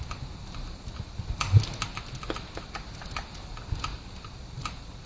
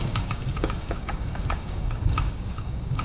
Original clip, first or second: first